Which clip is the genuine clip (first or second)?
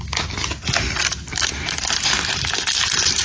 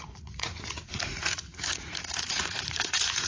first